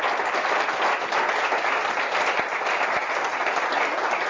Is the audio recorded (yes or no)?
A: yes